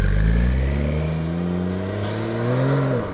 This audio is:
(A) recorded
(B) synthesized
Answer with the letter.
A